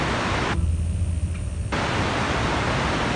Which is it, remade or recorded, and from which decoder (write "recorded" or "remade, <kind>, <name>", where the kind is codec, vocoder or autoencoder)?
recorded